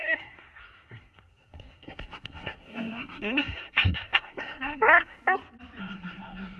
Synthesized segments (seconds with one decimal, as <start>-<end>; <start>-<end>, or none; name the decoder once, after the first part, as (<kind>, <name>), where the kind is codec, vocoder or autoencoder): 0.0-5.2 (codec, SNAC); 5.8-6.6